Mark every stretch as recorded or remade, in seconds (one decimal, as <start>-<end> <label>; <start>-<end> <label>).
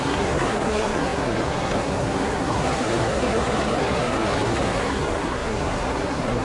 0.0-6.4 remade